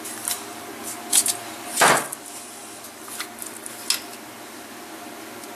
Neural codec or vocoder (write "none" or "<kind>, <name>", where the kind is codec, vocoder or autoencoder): none